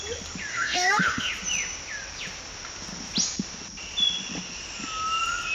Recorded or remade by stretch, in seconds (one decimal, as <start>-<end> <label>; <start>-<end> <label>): 0.0-0.5 recorded; 0.5-1.3 remade; 1.3-5.5 recorded